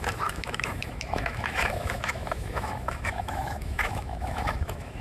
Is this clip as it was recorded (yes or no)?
no